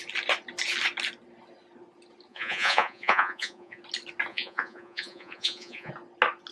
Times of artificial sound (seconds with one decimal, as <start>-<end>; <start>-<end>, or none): 2.3-3.8; 4.3-5.9